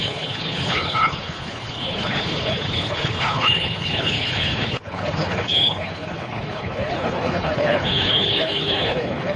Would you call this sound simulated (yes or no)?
yes